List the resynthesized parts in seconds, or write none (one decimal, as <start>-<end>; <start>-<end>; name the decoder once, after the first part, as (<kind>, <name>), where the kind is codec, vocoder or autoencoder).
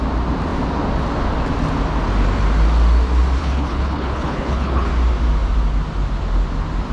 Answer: 3.4-4.9 (codec, HILCodec)